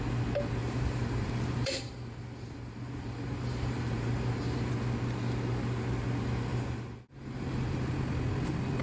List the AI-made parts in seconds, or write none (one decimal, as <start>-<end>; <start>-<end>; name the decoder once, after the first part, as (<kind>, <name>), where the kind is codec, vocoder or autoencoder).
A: 0.6-4.7 (vocoder, BigVGAN v2); 6.5-7.9